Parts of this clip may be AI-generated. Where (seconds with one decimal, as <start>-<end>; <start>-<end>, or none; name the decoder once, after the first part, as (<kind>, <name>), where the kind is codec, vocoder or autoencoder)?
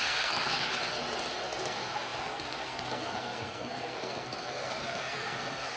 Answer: 0.0-0.7 (codec, SNAC); 1.4-5.8